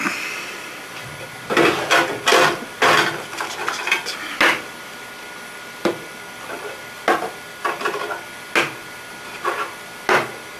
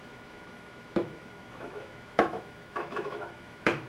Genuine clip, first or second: first